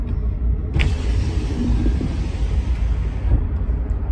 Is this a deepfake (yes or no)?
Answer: no